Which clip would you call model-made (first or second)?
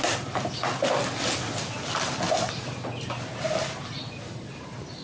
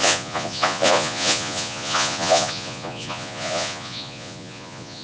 second